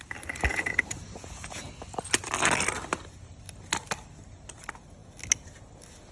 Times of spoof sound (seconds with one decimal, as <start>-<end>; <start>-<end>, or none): 0.5-1.7